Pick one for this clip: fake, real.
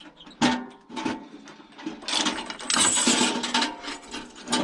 real